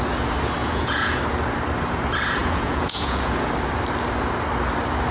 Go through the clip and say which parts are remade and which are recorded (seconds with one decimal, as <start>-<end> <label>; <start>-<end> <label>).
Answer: 0.0-0.6 recorded; 0.6-1.2 remade; 1.2-2.4 recorded; 2.4-3.5 remade; 3.5-5.1 recorded